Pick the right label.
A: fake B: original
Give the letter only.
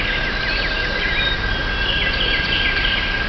B